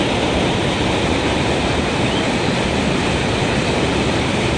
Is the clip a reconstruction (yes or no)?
yes